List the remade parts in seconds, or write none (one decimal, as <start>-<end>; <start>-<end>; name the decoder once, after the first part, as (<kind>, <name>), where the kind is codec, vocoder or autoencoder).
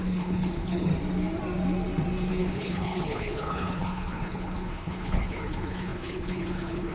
0.0-0.9 (codec, HILCodec); 2.3-6.9